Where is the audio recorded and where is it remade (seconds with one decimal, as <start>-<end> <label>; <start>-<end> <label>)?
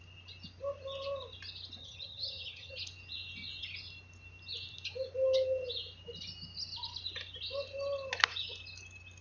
0.0-1.8 recorded; 1.8-2.7 remade; 2.7-9.2 recorded